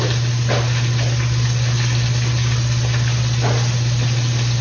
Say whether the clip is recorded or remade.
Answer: recorded